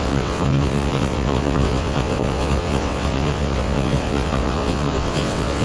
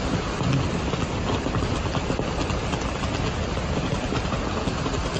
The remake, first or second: first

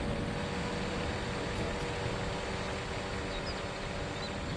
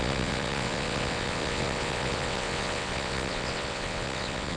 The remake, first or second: second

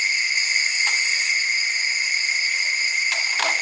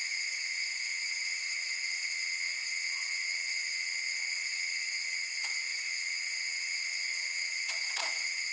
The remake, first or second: second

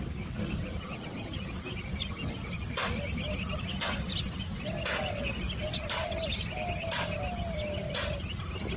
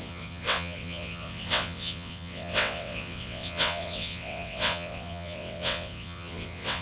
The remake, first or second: second